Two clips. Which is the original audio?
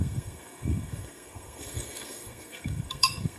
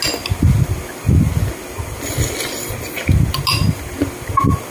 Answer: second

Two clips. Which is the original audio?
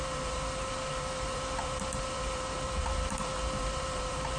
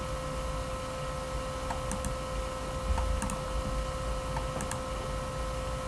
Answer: second